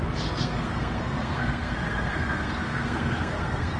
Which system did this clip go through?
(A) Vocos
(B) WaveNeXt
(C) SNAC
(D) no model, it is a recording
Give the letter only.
C